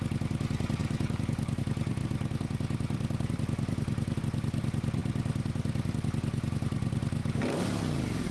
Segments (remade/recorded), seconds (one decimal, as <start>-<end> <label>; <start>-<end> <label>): 0.0-0.8 recorded; 0.8-1.6 remade; 1.6-7.2 recorded; 7.2-7.8 remade; 7.8-8.3 recorded